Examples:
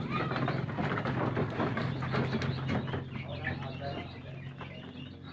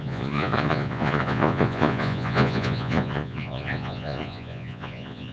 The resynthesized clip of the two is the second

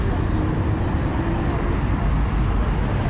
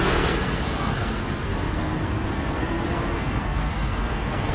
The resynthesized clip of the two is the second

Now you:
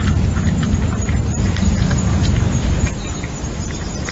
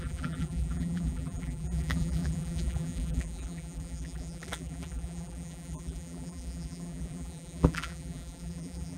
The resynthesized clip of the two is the second